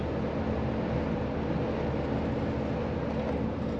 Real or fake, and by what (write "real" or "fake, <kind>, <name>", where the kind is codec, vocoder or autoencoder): real